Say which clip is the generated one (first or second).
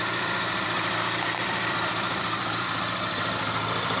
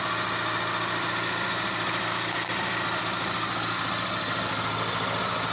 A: first